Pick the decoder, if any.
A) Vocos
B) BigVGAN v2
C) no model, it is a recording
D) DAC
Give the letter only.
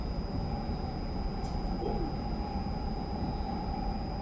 C